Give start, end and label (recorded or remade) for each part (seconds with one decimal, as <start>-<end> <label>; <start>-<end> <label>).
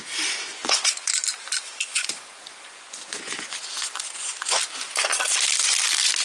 0.0-0.5 recorded; 0.5-1.1 remade; 1.1-1.9 recorded; 1.9-4.6 remade; 4.6-6.2 recorded